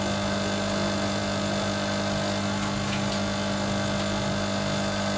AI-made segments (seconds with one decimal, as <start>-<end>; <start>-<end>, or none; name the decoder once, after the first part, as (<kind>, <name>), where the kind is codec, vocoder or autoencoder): none